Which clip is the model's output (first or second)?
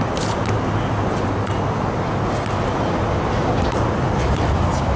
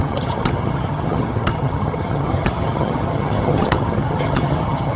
second